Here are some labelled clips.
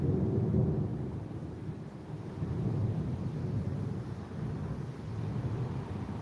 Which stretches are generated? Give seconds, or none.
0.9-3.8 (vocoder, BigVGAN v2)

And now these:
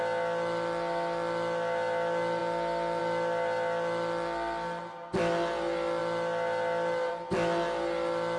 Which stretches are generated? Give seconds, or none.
none

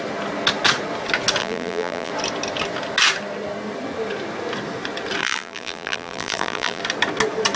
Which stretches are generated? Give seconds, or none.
1.4-2.1 (vocoder, BigVGAN v2); 5.2-6.8